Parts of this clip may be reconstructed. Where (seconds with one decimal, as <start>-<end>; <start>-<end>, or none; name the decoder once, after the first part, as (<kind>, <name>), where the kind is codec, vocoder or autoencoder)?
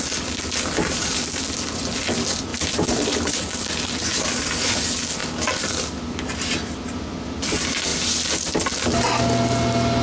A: 2.5-3.4 (vocoder, BigVGAN v2); 7.9-8.6